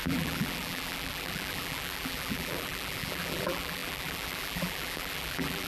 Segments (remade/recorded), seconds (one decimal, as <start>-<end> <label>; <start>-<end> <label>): 0.0-5.7 remade